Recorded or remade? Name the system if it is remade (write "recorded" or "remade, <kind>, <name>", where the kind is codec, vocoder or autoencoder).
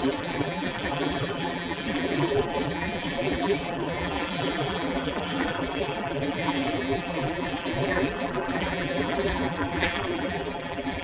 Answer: remade, vocoder, BigVGAN v2